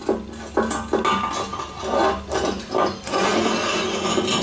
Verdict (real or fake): real